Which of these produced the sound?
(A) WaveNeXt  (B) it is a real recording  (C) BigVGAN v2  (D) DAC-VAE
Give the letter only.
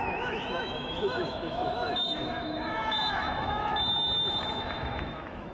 D